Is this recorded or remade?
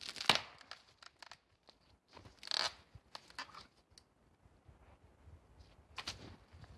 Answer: recorded